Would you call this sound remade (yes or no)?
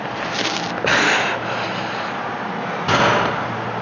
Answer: no